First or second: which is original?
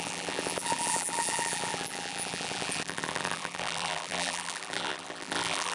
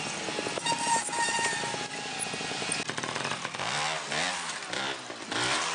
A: second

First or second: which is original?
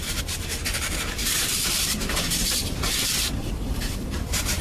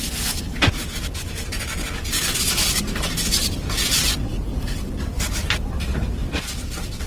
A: second